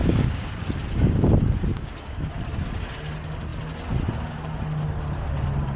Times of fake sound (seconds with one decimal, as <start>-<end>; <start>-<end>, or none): 0.0-0.6; 1.7-2.3